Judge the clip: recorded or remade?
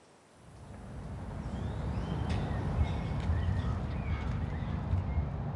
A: recorded